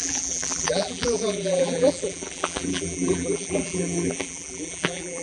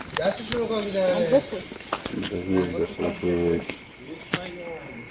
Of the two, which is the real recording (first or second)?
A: second